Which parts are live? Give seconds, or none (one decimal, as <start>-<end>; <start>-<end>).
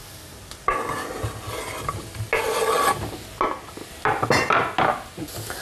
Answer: 0.0-5.6